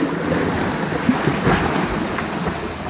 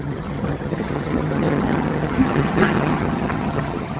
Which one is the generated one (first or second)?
second